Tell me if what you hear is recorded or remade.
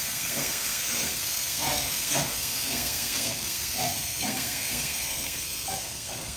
remade